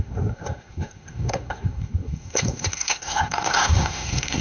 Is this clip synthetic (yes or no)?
yes